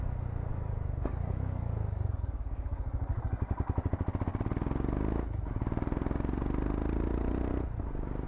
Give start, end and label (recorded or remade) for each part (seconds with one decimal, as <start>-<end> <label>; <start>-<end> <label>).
0.0-0.5 recorded; 0.5-3.2 remade; 3.2-8.3 recorded